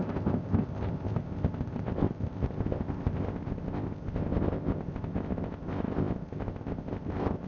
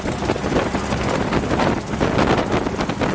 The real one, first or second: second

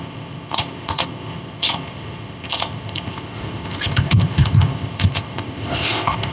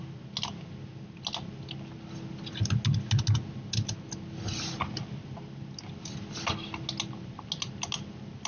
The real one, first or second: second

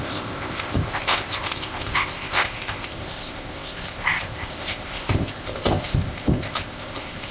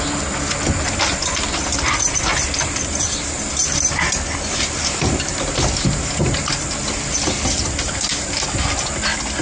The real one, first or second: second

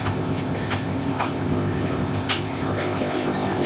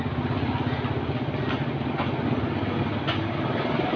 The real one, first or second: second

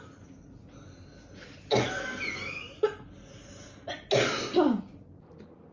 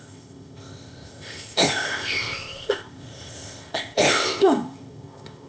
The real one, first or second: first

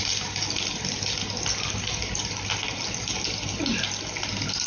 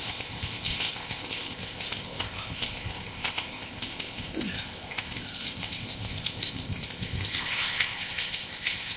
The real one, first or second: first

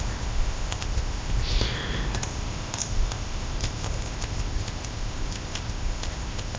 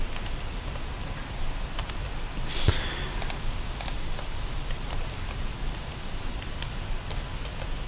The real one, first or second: second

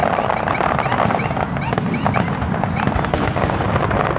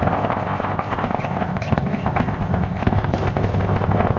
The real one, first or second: first